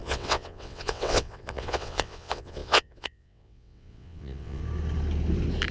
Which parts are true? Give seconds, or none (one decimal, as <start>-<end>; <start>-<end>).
4.6-5.7